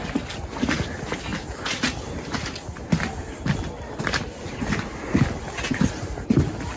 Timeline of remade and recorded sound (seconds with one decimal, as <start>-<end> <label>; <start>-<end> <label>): 0.0-6.8 recorded